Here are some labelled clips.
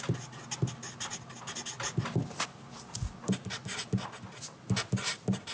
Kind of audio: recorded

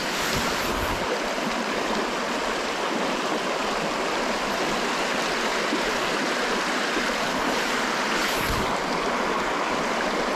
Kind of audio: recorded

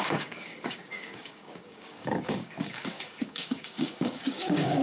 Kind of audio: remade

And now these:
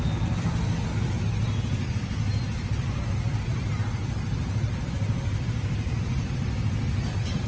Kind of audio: recorded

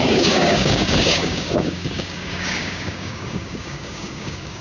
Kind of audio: remade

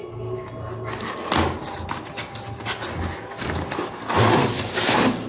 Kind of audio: recorded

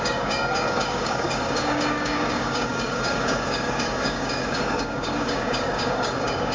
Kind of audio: remade